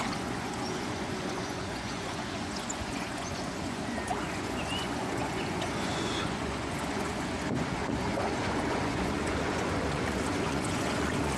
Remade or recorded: remade